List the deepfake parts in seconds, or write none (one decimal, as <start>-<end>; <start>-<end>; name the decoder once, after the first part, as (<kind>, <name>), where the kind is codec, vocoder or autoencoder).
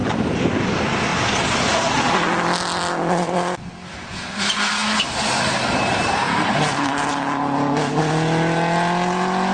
none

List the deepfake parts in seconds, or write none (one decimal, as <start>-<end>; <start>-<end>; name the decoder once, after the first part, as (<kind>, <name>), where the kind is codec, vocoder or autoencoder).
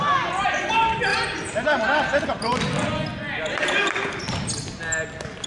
none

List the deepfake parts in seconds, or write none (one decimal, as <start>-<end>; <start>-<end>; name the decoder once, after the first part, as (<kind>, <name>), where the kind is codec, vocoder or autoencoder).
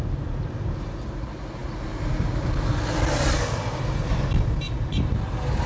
none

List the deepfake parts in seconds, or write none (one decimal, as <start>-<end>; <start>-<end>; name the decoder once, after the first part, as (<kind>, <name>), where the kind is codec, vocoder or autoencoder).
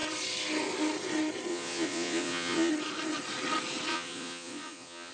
1.5-2.7 (vocoder, Vocos); 3.9-5.1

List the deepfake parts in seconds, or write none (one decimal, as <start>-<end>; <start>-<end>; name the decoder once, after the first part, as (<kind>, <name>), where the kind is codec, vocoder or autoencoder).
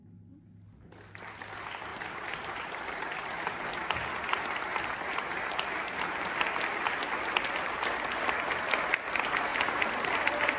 1.9-6.3 (vocoder, BigVGAN v2)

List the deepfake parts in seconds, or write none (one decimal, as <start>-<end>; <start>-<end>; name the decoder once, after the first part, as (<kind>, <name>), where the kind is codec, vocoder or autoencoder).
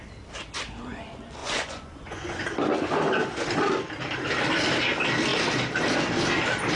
1.4-2.4 (vocoder, Vocos)